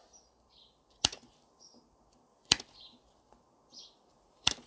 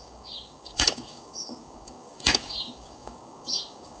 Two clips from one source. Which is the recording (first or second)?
first